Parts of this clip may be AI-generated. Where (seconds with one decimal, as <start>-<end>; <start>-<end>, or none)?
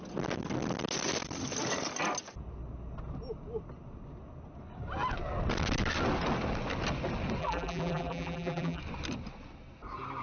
7.4-8.8